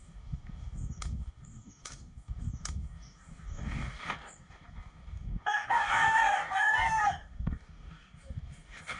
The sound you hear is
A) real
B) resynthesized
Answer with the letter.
B